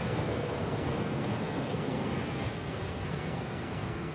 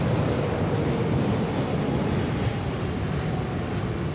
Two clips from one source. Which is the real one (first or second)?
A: second